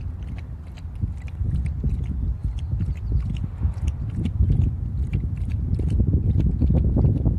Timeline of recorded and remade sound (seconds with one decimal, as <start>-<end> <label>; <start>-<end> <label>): 0.0-7.4 recorded